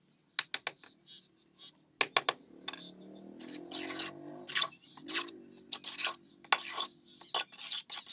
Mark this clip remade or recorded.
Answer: recorded